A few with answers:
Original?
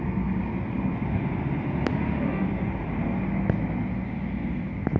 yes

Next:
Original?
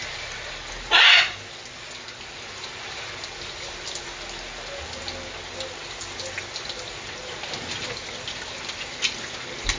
yes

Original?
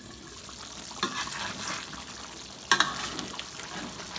yes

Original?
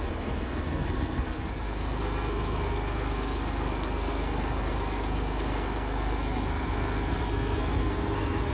no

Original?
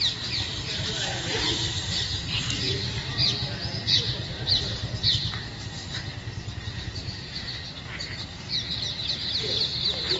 yes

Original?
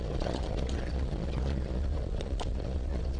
no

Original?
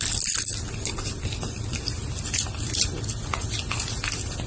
no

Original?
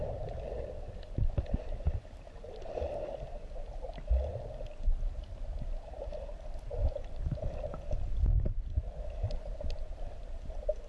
yes